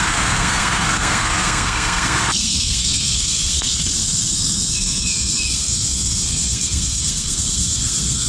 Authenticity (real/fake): fake